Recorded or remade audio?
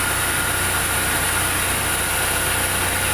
recorded